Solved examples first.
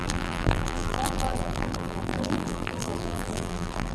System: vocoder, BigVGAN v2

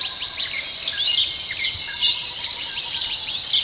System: none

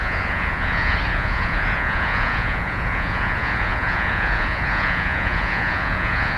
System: vocoder, Vocos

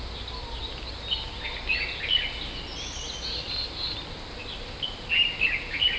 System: none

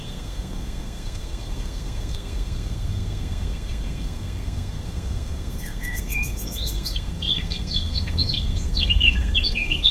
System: codec, SNAC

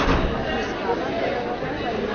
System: none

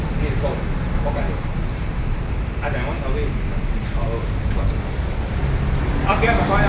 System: none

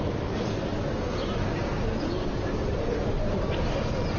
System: none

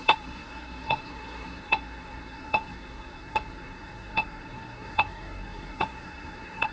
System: codec, SNAC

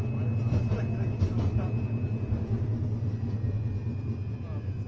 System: none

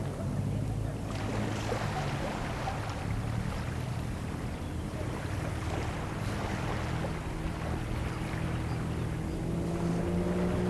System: none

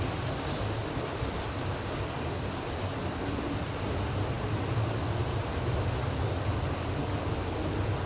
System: none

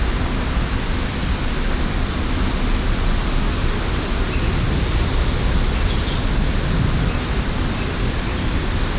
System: none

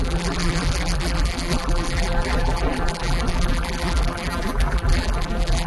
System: vocoder, BigVGAN v2